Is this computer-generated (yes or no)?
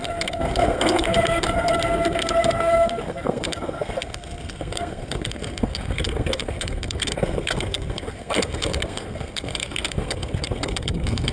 yes